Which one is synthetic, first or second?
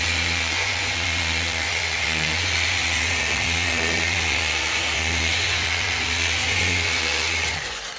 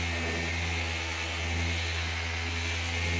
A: first